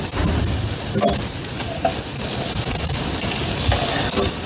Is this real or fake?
real